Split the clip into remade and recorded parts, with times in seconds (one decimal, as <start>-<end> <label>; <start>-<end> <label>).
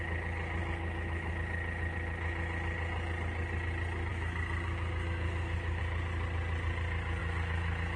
0.0-0.6 recorded; 0.6-1.3 remade; 1.3-4.1 recorded; 4.1-5.8 remade; 5.8-7.2 recorded; 7.2-8.0 remade